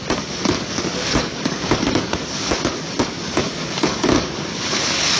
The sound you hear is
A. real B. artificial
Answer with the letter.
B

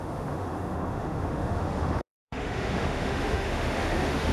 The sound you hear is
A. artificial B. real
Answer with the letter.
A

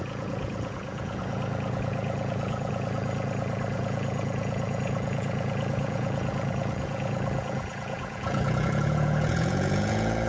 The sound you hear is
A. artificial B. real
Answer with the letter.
A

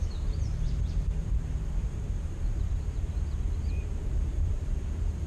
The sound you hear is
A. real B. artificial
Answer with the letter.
B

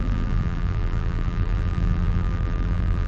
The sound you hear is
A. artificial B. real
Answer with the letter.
A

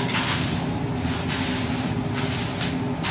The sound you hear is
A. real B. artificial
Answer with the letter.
A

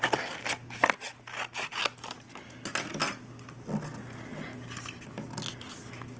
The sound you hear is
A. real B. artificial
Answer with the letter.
A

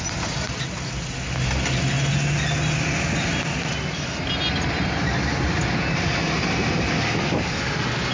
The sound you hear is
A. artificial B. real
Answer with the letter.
B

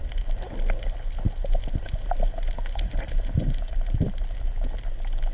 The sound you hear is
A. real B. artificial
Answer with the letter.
A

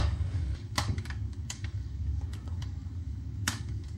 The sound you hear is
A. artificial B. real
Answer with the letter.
A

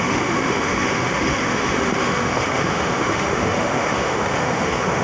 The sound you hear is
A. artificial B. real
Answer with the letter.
A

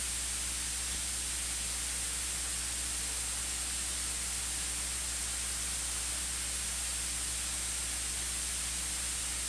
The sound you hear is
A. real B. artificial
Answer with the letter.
A